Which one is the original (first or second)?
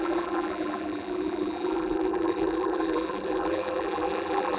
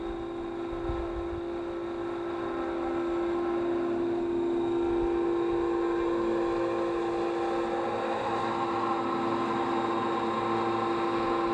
second